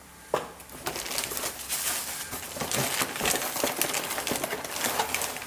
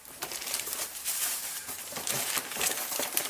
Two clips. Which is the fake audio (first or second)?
second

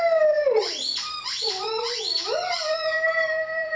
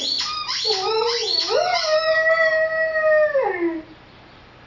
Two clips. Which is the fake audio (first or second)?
first